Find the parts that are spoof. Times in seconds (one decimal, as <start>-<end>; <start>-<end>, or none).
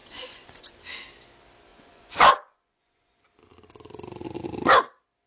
0.0-0.7; 1.7-3.2